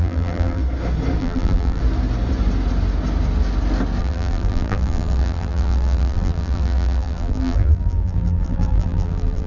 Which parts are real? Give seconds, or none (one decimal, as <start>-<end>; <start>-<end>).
0.6-1.2; 1.8-4.0